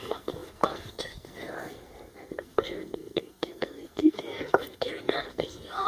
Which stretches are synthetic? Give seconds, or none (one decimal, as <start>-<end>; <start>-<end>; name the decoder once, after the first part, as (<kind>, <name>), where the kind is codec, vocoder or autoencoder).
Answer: 0.0-5.9 (codec, SNAC)